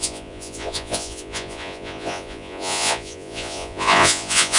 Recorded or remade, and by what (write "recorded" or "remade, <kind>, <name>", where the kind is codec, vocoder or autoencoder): remade, vocoder, Vocos